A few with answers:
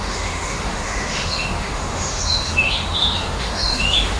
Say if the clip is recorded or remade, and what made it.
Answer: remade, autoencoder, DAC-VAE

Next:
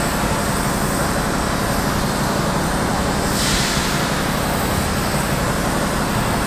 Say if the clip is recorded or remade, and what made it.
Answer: recorded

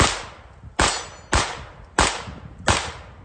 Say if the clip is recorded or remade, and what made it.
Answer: recorded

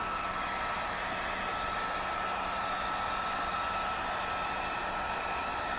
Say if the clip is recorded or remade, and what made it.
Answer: recorded